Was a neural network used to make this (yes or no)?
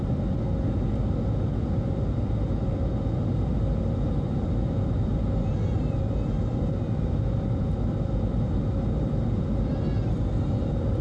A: no